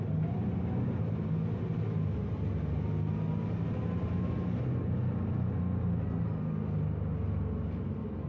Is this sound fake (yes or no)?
no